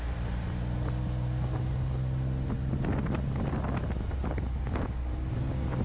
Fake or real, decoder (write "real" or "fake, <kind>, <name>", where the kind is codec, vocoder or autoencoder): real